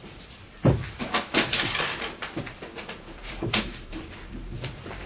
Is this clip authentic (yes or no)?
no